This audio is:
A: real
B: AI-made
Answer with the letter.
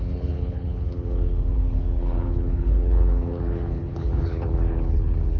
B